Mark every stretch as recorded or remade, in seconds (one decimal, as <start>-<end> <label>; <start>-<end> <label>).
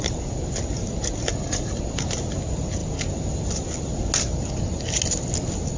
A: 0.0-1.3 recorded; 1.3-1.8 remade; 1.8-5.8 recorded